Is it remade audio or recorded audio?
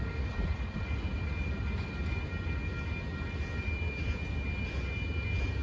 recorded